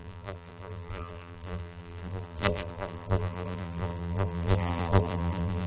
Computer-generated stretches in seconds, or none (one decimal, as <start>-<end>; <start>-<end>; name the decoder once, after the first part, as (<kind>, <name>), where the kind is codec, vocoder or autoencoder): 0.0-5.7 (vocoder, BigVGAN v2)